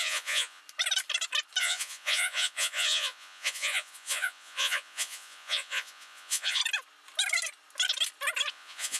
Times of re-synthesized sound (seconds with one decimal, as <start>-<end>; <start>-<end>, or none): 0.0-0.6; 1.6-6.6; 8.5-9.0

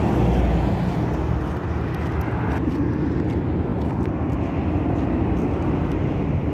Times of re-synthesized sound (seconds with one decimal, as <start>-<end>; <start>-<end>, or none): none

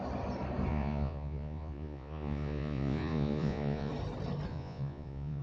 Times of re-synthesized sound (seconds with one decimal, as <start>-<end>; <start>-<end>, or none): 0.7-3.9; 4.5-5.4

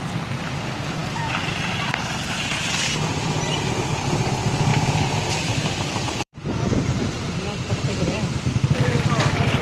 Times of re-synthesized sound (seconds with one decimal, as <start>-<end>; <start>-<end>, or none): 4.7-9.0

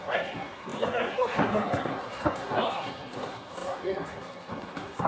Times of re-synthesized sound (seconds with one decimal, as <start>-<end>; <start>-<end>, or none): 0.0-5.1

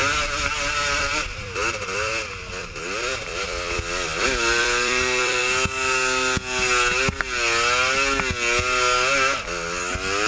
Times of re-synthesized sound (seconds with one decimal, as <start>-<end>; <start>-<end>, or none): 1.0-5.4